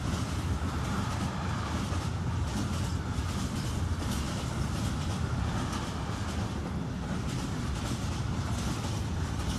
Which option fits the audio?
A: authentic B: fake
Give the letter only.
A